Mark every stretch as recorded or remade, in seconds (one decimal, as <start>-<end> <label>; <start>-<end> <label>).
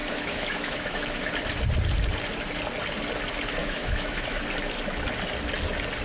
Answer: 0.0-1.3 remade; 1.3-3.6 recorded; 3.6-4.4 remade; 4.4-6.0 recorded